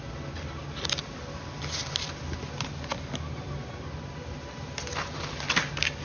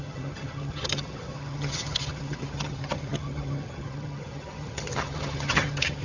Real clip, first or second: first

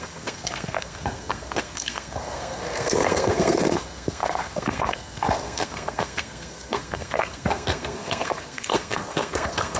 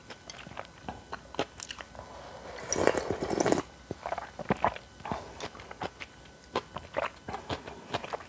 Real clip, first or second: second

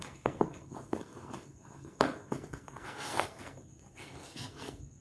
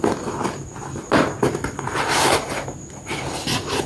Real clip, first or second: second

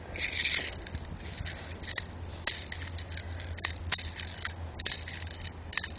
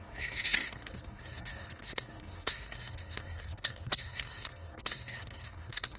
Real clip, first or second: first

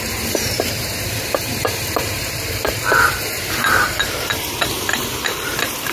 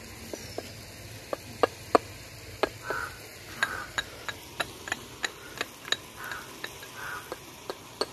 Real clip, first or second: second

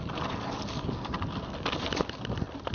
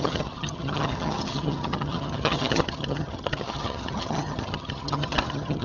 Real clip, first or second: first